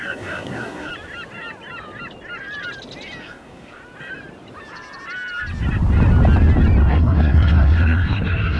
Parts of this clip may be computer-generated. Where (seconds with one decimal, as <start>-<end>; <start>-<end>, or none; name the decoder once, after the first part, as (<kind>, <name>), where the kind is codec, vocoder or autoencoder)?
0.0-0.9 (codec, SNAC); 3.2-3.8; 6.9-8.6